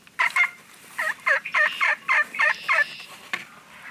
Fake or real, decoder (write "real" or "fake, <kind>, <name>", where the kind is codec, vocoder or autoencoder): fake, vocoder, BigVGAN v2